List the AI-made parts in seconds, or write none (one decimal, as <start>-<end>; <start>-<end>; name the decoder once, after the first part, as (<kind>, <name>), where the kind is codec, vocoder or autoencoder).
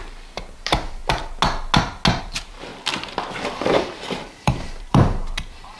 0.0-1.0 (vocoder, BigVGAN v2); 2.2-2.7; 3.6-5.8